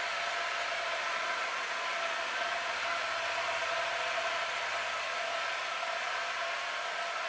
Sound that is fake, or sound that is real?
real